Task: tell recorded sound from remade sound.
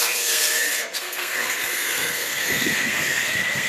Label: remade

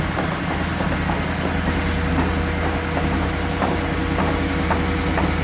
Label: recorded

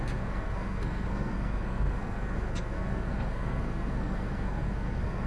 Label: remade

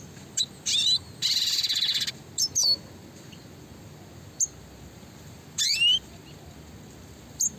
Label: recorded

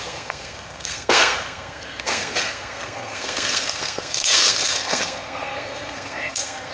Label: remade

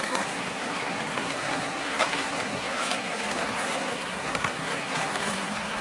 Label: remade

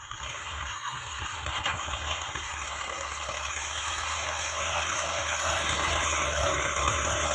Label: remade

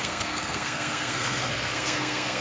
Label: remade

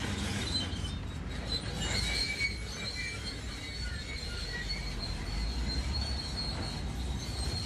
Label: recorded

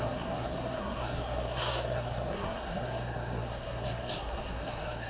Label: remade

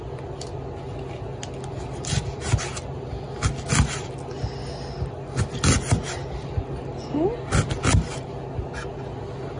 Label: recorded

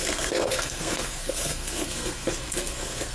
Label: remade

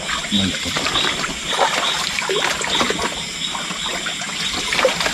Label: recorded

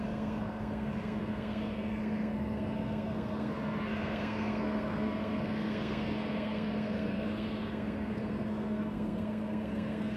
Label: remade